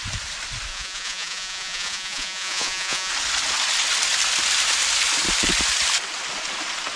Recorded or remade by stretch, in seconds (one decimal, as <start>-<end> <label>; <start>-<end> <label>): 0.0-0.7 recorded; 0.7-3.1 remade; 3.1-7.0 recorded